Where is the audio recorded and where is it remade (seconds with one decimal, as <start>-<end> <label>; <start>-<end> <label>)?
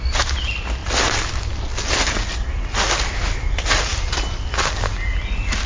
0.0-5.7 recorded